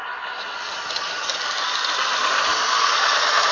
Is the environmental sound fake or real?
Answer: real